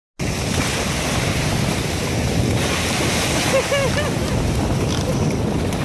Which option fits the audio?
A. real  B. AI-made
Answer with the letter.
A